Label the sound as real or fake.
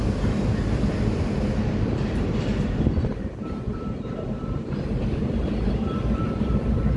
fake